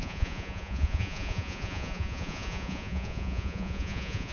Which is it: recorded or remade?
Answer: remade